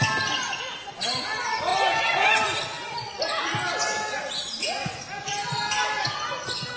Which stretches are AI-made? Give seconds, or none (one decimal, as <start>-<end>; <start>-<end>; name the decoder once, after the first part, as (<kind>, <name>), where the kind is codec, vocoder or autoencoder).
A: none